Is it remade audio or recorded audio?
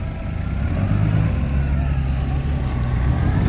recorded